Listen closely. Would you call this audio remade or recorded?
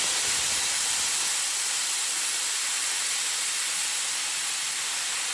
recorded